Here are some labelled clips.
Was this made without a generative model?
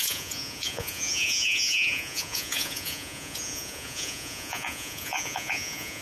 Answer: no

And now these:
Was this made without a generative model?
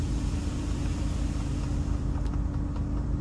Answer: yes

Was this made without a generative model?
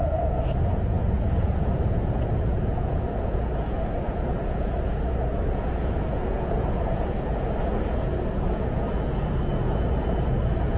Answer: no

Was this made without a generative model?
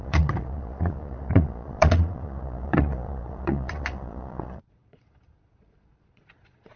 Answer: no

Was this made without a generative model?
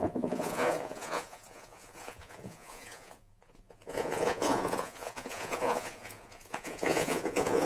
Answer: no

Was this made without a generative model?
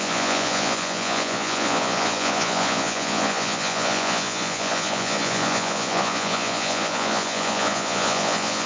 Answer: no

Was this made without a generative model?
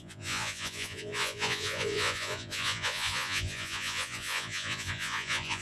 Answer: no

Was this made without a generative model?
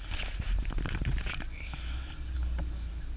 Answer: yes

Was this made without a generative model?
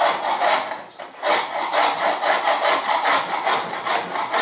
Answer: yes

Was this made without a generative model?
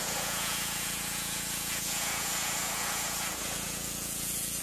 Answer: no